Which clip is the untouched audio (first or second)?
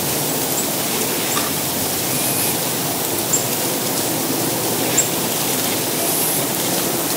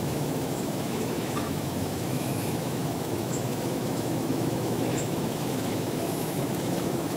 first